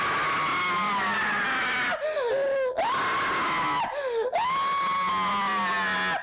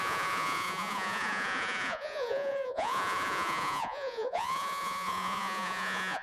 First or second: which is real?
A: first